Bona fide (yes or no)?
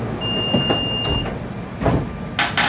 yes